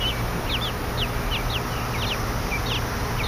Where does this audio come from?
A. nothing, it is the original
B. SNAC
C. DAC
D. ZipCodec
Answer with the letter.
A